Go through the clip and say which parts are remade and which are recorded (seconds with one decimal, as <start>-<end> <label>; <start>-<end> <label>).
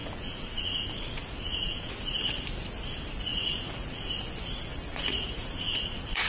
0.0-1.9 remade; 1.9-3.3 recorded; 3.3-4.1 remade; 4.1-4.7 recorded; 4.7-6.3 remade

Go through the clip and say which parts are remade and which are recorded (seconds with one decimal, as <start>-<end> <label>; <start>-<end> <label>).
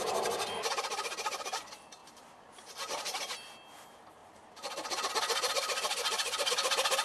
0.0-2.0 recorded; 2.0-3.2 remade; 3.2-7.0 recorded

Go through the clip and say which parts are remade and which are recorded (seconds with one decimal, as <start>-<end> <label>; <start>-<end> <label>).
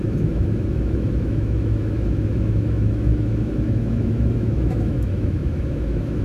0.0-6.2 remade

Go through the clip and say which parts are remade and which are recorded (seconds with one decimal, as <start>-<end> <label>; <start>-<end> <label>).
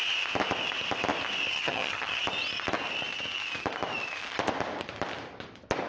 0.0-1.5 recorded; 1.5-2.2 remade; 2.2-5.9 recorded